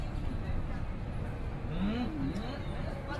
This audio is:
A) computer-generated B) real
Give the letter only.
B